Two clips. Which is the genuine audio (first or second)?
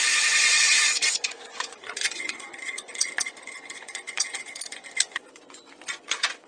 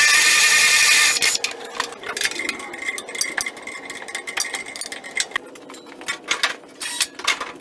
second